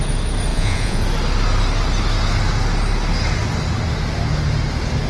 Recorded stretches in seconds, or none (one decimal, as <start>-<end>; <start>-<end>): 0.0-0.5; 1.0-5.1